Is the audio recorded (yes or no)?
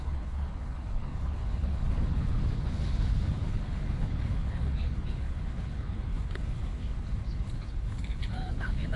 no